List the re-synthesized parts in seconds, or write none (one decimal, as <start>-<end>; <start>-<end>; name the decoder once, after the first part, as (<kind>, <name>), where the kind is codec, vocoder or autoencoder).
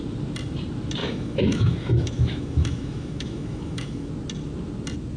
1.0-4.1 (autoencoder, DAC-VAE)